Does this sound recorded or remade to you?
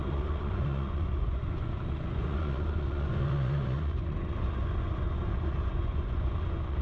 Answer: remade